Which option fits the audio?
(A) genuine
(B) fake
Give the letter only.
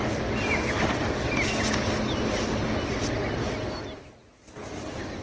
A